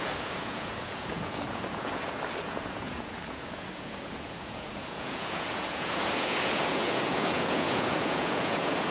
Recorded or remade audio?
remade